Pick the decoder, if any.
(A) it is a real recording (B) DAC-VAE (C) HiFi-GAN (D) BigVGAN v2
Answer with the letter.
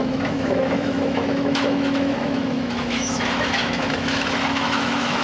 B